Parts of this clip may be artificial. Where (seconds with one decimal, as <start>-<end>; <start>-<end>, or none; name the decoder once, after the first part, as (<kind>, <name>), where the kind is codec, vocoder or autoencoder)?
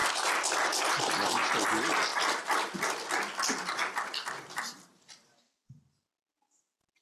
none